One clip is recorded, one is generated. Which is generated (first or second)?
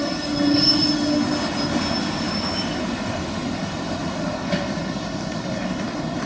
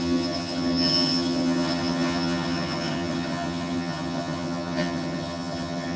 second